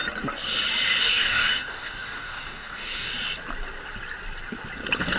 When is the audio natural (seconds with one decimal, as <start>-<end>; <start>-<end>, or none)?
0.0-1.0; 3.1-5.2